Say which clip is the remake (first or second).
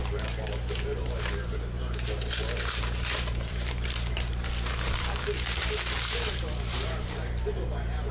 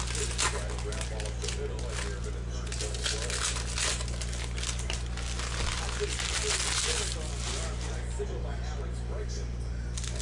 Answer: first